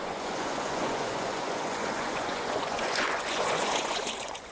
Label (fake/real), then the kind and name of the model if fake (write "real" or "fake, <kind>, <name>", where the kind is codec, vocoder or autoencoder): fake, vocoder, Vocos